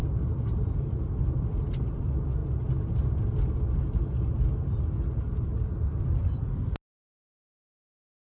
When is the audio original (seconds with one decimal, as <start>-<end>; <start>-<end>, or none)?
0.0-8.3